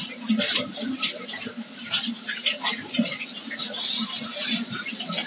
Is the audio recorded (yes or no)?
no